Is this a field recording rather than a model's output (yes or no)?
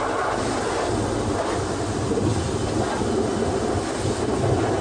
yes